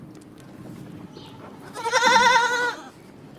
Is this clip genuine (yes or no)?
yes